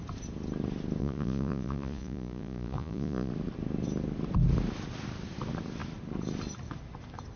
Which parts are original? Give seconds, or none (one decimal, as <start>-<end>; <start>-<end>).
0.0-1.0; 3.3-7.4